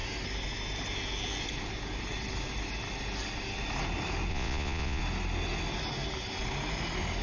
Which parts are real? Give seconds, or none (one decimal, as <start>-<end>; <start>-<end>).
0.0-4.3; 5.0-7.2